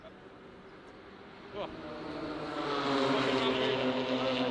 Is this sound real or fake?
real